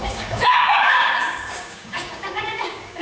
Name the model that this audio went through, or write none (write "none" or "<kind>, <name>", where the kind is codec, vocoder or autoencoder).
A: codec, DAC